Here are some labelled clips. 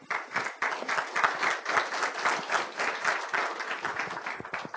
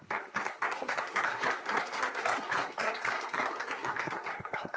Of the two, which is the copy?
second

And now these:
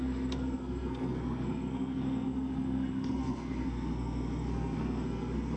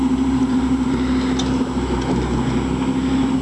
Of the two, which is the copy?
first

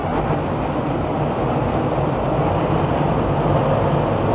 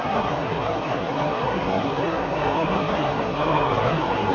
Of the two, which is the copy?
second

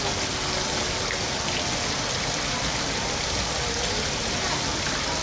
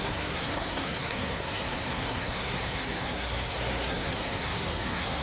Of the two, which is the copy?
second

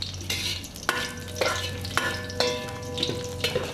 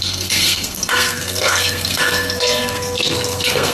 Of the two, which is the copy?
second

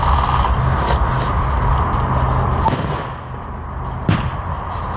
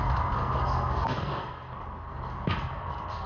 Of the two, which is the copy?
second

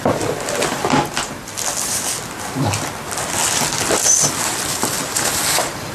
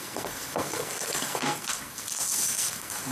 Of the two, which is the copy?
second